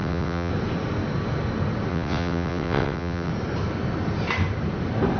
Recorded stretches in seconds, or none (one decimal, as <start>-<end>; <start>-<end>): 0.5-1.9; 3.3-5.2